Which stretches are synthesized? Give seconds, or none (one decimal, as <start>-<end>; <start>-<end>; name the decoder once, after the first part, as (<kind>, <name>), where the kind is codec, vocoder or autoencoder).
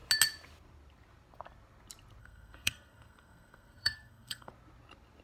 2.2-4.5 (codec, SNAC)